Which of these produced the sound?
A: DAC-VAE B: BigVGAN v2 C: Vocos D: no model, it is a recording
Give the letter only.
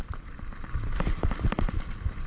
D